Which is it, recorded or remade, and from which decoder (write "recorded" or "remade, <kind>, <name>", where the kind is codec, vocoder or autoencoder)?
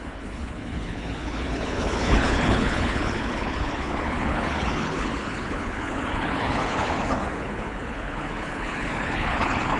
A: remade, codec, HILCodec